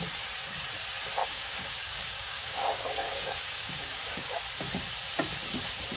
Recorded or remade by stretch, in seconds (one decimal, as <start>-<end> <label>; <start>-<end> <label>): 0.0-1.2 recorded; 1.2-4.4 remade; 4.4-6.0 recorded